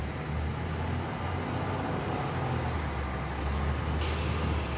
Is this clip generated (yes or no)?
no